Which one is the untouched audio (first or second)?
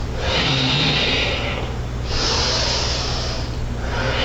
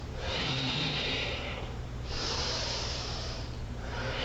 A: first